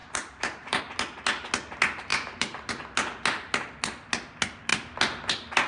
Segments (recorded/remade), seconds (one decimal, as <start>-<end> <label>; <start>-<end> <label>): 0.0-0.8 remade; 0.8-2.1 recorded; 2.1-2.7 remade; 2.7-5.7 recorded